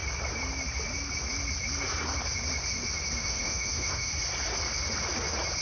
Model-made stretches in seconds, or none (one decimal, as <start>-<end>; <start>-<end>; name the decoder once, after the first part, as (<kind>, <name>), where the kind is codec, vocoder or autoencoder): 3.2-4.1 (autoencoder, DAC-VAE)